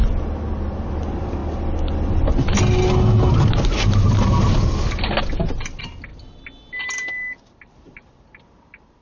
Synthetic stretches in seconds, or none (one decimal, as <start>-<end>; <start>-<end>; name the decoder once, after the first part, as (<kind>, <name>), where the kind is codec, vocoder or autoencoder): none